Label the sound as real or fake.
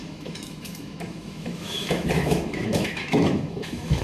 fake